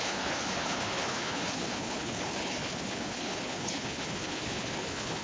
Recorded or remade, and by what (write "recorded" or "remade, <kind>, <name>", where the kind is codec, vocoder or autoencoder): remade, codec, HILCodec